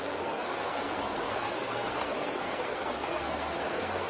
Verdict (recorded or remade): remade